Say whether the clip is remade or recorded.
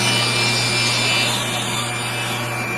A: recorded